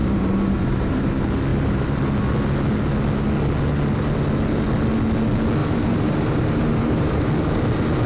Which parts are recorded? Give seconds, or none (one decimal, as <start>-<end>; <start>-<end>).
1.1-1.5; 2.0-5.6; 7.3-8.1